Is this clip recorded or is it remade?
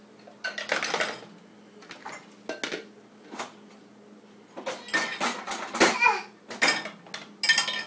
recorded